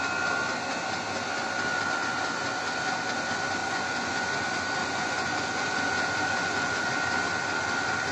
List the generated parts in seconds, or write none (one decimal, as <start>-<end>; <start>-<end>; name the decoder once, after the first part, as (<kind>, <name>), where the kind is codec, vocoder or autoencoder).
3.6-4.3 (vocoder, Vocos); 4.8-6.9